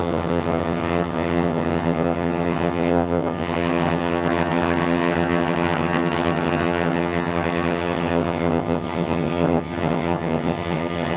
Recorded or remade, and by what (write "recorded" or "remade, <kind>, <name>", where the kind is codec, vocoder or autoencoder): remade, vocoder, HiFi-GAN